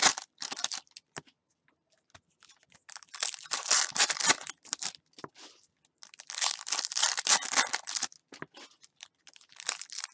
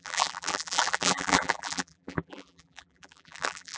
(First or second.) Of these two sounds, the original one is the first